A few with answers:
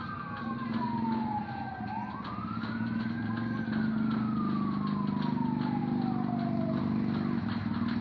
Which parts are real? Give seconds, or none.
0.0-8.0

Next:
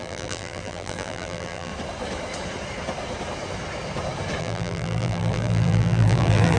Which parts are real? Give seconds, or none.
1.7-4.4

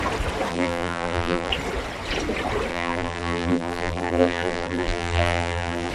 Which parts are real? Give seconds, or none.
0.0-0.5; 1.5-2.7

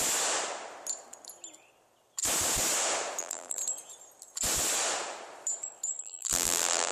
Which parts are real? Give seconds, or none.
0.0-3.2; 3.6-6.0

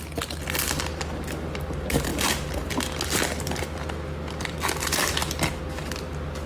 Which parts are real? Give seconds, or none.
0.0-6.5